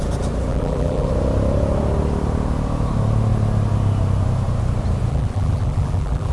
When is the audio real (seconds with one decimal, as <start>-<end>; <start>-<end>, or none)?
0.0-0.5; 1.1-5.1